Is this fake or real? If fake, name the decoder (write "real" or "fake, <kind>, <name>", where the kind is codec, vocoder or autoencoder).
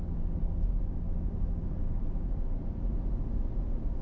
real